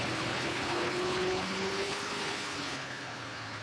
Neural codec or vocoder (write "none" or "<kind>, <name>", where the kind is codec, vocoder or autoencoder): codec, HILCodec